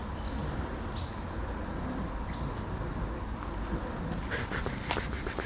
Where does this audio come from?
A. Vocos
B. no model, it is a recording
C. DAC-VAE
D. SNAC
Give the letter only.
B